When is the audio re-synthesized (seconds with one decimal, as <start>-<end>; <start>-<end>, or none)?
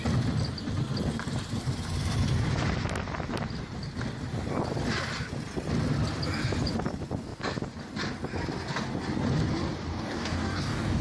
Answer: 9.9-11.0